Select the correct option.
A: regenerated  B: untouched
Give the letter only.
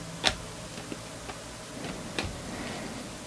B